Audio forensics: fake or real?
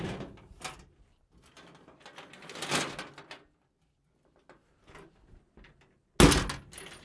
real